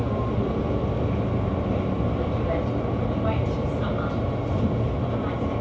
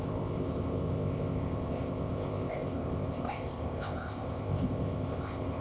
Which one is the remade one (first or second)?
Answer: second